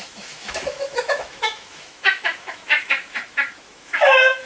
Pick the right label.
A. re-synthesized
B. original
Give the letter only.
A